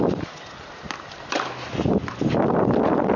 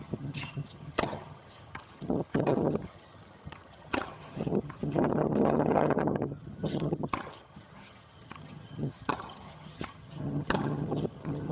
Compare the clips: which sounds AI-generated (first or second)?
second